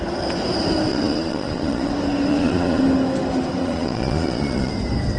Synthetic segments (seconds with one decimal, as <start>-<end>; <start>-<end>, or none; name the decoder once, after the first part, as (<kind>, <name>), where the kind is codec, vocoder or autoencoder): 0.9-1.9 (vocoder, Vocos); 2.3-2.8; 3.6-4.7